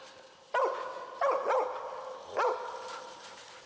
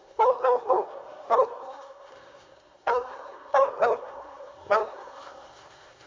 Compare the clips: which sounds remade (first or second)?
second